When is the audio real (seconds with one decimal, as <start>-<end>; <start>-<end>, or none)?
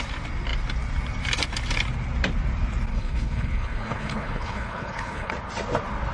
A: 0.0-2.9; 5.3-6.1